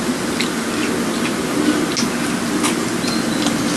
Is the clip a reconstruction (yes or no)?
no